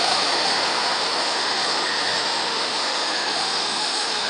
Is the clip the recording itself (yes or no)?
no